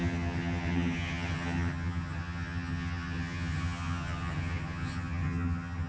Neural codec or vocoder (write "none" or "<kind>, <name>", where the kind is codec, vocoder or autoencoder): vocoder, HiFi-GAN